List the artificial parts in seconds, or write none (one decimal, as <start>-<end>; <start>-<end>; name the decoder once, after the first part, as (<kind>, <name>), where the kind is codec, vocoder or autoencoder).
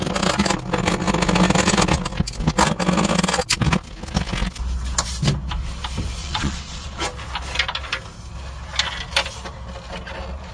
6.2-7.0 (vocoder, Vocos)